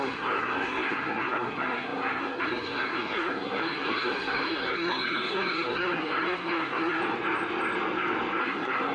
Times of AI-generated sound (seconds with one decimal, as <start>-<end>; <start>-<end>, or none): 0.0-7.0; 8.4-8.9